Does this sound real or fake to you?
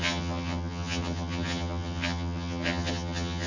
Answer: fake